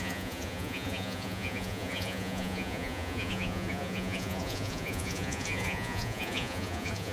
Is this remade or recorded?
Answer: remade